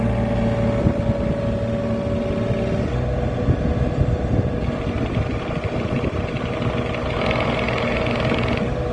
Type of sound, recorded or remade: recorded